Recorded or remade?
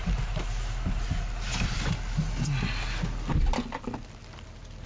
recorded